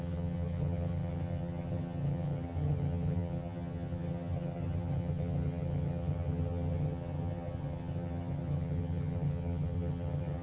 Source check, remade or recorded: remade